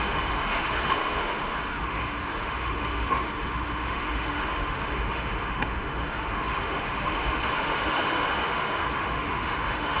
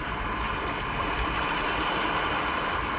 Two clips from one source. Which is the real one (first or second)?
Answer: second